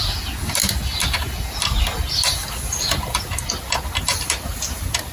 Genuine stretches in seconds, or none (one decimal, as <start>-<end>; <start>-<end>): 0.0-5.1